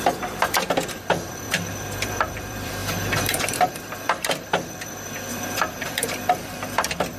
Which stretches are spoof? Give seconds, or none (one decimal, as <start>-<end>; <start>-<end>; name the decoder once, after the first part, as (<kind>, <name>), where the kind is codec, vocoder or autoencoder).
0.0-7.2 (vocoder, BigVGAN v2)